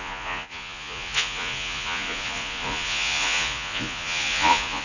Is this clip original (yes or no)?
no